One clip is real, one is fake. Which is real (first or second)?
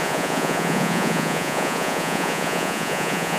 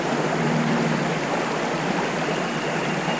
second